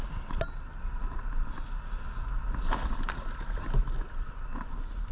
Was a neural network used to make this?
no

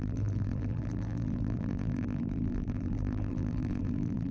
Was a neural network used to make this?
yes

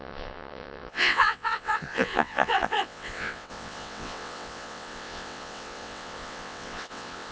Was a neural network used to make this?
yes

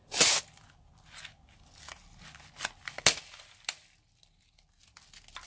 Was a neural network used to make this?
no